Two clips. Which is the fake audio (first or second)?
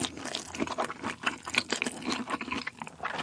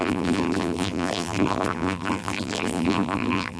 second